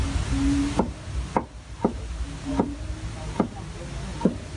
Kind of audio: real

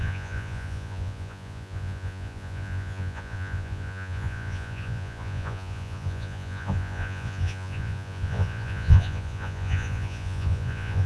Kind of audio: fake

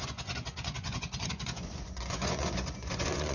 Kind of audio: fake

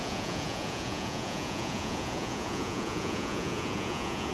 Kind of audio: fake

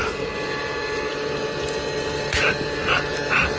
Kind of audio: real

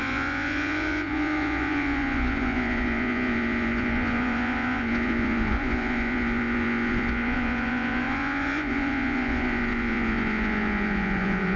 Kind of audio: fake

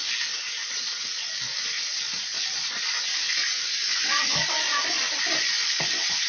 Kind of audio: real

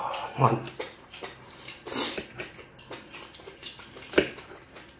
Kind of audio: real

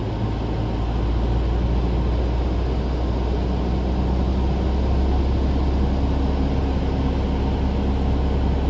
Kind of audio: real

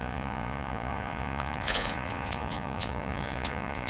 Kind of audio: fake